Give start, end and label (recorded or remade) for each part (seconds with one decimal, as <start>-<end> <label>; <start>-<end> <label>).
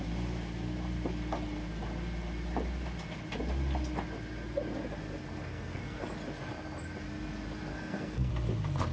0.0-5.5 recorded; 5.5-6.0 remade; 6.0-7.7 recorded; 7.7-8.3 remade; 8.3-8.9 recorded